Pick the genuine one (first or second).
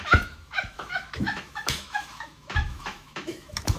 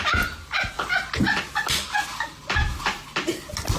second